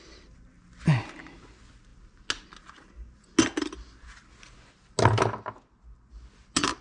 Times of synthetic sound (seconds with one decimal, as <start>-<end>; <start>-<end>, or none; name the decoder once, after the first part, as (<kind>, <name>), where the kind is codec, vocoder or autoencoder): none